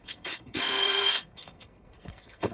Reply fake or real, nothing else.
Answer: fake